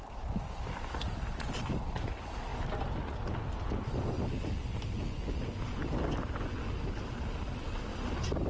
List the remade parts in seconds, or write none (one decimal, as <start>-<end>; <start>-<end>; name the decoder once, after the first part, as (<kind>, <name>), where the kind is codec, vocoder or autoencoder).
0.0-0.7 (autoencoder, DAC-VAE)